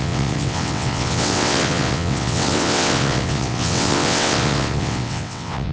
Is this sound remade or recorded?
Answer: remade